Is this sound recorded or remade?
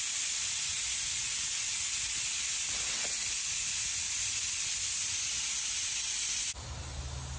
recorded